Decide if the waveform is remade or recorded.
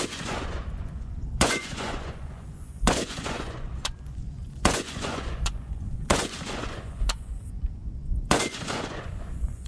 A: remade